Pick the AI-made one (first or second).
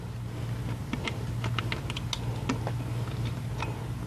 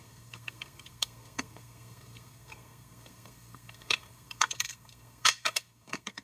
second